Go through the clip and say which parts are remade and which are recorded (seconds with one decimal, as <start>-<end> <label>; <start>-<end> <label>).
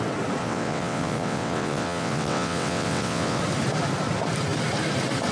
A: 0.0-0.4 recorded; 0.4-3.4 remade; 3.4-5.3 recorded